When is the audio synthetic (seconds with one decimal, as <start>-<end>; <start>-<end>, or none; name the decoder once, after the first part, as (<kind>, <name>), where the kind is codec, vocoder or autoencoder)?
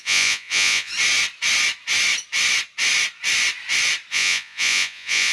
0.0-0.9 (vocoder, Vocos); 4.1-5.3